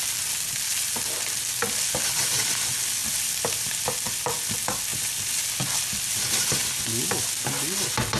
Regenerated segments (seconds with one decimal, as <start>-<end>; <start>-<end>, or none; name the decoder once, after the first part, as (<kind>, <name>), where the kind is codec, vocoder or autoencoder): 3.0-3.6 (vocoder, BigVGAN v2); 4.9-5.8; 6.6-7.3